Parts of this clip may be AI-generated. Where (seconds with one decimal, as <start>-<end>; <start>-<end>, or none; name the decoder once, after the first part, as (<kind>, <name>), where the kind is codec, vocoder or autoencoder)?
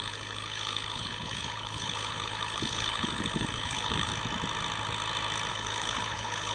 0.0-4.1 (codec, HILCodec); 5.5-6.5